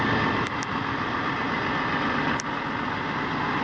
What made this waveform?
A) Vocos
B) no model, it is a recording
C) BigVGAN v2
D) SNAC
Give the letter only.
B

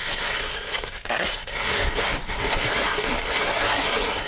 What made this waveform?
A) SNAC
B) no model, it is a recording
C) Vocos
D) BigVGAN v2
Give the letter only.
A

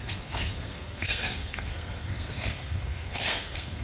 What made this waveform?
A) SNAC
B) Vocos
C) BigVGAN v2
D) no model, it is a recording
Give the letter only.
A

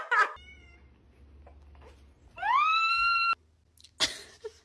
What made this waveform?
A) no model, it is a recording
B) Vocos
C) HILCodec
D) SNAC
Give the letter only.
A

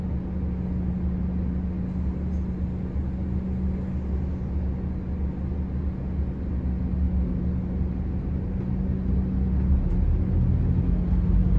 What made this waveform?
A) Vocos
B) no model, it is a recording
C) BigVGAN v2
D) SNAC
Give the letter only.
B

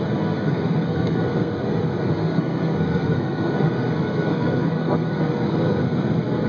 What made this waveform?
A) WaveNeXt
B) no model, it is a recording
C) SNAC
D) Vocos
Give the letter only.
C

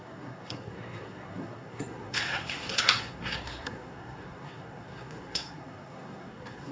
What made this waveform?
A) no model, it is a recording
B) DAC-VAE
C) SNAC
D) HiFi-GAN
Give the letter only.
C